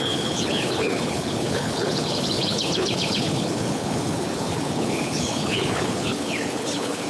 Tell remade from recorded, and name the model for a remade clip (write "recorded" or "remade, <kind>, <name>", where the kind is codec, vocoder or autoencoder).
remade, codec, HILCodec